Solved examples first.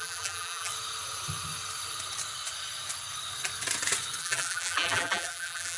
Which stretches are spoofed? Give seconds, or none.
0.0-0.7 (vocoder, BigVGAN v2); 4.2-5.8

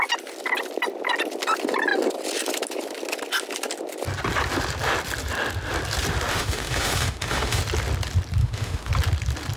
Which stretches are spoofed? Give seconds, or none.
6.3-7.6 (autoencoder, DAC-VAE); 8.4-8.9

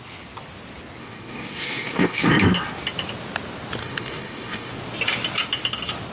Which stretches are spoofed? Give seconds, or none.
1.0-2.3 (codec, DAC); 3.8-4.7

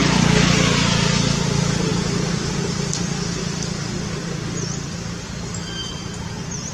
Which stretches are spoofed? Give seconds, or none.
none

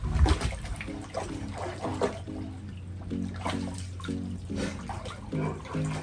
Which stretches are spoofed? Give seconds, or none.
none